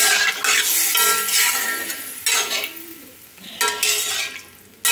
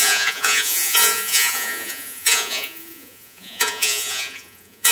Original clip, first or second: first